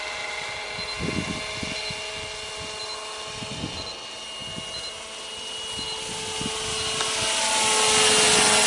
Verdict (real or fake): real